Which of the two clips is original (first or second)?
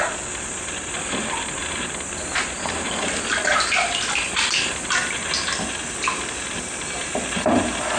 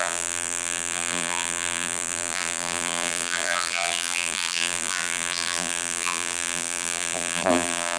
first